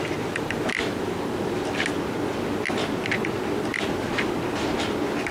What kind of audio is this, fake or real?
real